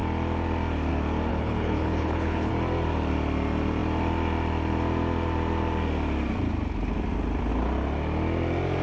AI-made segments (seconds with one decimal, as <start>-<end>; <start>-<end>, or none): 1.3-2.5